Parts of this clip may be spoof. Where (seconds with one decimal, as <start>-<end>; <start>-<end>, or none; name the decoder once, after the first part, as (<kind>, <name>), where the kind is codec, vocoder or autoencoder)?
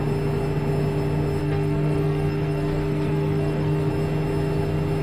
1.4-3.9 (codec, SNAC)